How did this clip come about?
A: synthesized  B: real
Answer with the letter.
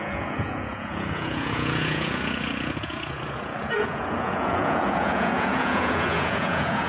A